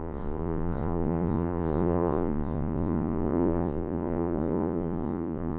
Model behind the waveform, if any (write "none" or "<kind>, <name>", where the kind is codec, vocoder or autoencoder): vocoder, Vocos